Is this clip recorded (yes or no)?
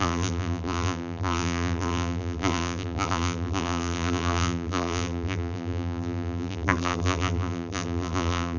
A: no